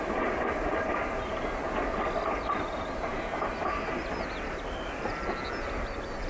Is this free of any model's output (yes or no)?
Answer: yes